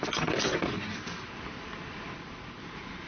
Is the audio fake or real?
real